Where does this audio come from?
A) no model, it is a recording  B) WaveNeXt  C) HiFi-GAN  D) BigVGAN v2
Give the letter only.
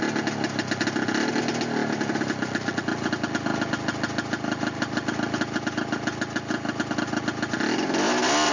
A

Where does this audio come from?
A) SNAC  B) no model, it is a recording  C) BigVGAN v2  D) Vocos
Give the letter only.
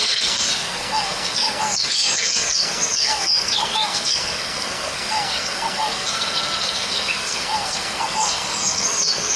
A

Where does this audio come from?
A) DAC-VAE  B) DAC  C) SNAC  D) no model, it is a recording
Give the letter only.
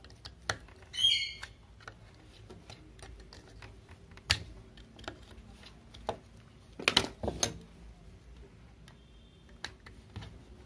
D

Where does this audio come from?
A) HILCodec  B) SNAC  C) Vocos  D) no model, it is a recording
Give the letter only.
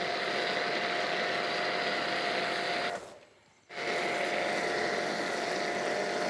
D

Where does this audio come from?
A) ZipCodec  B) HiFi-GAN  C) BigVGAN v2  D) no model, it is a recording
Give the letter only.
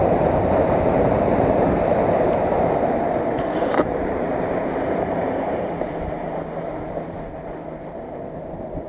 C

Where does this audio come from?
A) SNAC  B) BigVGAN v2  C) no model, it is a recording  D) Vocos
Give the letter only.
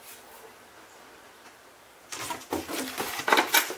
C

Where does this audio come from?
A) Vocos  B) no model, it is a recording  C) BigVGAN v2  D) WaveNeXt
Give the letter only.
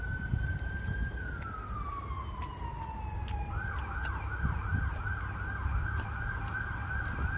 B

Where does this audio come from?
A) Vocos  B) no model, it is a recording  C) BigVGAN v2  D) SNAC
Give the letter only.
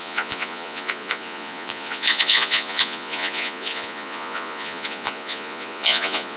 A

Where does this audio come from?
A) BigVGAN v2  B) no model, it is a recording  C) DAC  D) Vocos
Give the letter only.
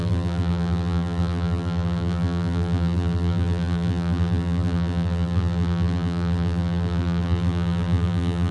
A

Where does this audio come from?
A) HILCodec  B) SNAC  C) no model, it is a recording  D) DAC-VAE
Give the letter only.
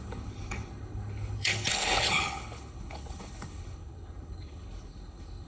A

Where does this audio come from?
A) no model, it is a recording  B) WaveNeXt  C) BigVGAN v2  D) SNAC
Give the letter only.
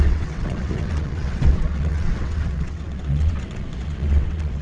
B